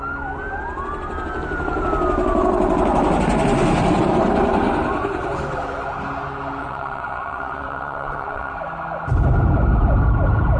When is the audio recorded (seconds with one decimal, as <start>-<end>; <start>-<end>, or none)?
0.0-6.6; 8.5-10.6